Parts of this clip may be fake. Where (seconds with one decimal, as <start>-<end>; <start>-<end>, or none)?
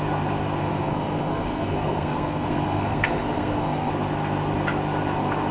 0.6-3.9